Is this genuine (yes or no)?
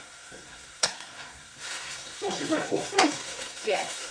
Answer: no